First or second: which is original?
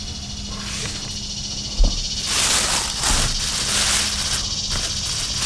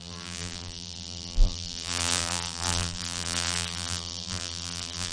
first